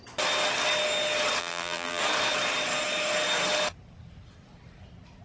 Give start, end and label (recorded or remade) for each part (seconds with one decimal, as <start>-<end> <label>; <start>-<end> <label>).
0.0-1.4 recorded; 1.4-2.0 remade; 2.0-5.2 recorded